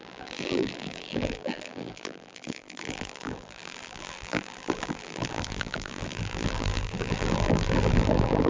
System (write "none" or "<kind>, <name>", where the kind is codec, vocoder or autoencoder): vocoder, BigVGAN v2